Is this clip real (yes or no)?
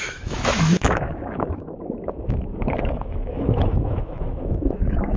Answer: no